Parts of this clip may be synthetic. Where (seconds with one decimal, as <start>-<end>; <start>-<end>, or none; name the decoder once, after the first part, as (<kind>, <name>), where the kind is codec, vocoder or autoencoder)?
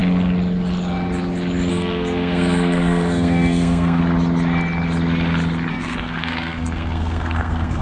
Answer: 1.7-4.0 (codec, SNAC); 5.7-7.8